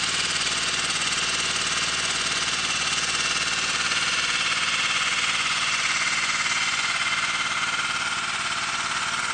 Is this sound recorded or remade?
remade